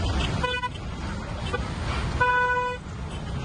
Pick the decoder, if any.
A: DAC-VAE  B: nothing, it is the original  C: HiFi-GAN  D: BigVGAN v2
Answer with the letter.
B